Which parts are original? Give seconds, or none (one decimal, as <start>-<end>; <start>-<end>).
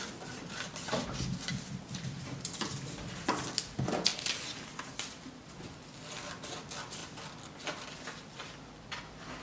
0.0-9.4